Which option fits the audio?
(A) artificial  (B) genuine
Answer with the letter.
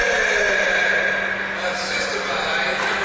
B